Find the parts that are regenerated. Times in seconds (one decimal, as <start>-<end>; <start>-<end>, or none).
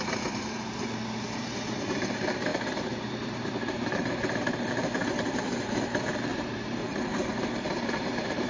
0.0-8.5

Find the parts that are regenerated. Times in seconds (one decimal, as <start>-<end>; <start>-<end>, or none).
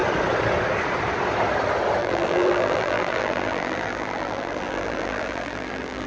2.0-6.1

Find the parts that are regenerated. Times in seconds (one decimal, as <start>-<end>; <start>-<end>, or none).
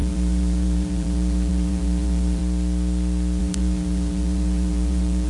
0.0-2.4; 3.4-5.3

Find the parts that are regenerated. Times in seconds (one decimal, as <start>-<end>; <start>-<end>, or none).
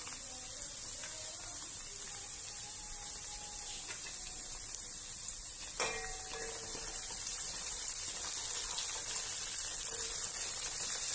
6.7-7.7